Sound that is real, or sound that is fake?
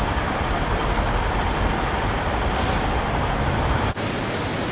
real